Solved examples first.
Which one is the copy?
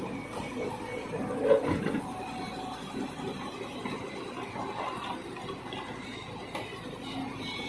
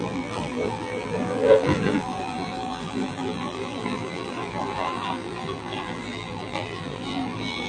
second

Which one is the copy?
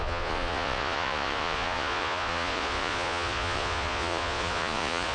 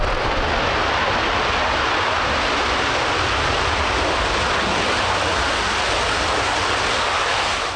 first